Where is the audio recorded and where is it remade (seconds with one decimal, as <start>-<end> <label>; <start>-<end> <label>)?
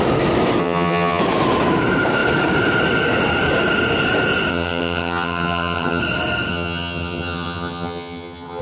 0.0-0.6 recorded; 0.6-1.2 remade; 1.2-4.5 recorded; 4.5-6.0 remade; 6.0-6.5 recorded; 6.5-8.6 remade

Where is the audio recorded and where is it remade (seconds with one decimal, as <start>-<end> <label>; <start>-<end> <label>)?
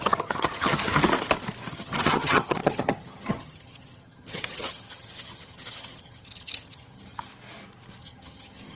0.0-0.9 remade; 0.9-1.7 recorded; 1.7-7.3 remade; 7.3-8.0 recorded; 8.0-8.8 remade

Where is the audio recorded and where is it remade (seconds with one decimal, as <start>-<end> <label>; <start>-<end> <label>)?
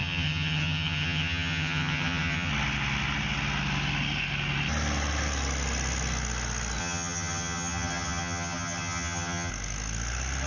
0.0-2.5 remade; 2.5-6.8 recorded; 6.8-9.5 remade; 9.5-10.5 recorded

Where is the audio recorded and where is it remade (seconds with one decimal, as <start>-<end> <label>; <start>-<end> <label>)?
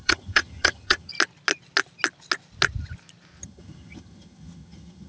0.0-1.1 remade; 1.1-3.4 recorded; 3.4-5.1 remade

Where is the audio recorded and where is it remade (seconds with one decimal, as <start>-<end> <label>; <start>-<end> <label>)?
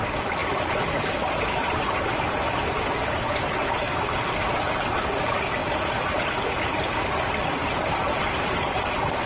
0.0-9.3 recorded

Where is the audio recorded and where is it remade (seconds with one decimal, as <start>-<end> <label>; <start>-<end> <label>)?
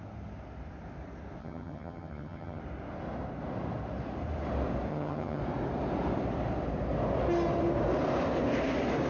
0.0-1.4 recorded; 1.4-2.6 remade; 2.6-4.9 recorded; 4.9-5.4 remade; 5.4-9.1 recorded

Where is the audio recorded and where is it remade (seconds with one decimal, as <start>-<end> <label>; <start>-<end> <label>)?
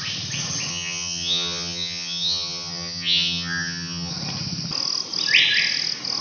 0.0-0.7 recorded; 0.7-4.1 remade; 4.1-6.2 recorded